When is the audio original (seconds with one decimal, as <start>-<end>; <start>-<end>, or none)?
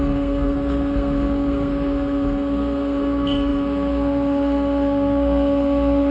none